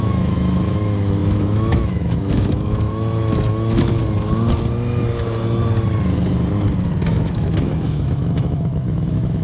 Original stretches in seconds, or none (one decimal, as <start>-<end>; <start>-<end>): 4.0-7.1